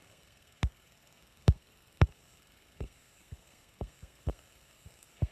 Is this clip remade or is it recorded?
remade